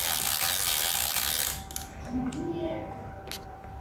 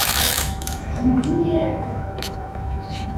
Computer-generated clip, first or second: second